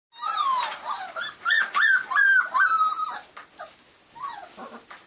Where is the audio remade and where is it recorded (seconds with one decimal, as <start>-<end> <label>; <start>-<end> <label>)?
0.0-5.1 recorded